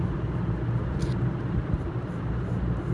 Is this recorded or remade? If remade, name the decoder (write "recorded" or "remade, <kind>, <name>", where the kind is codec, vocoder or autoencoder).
recorded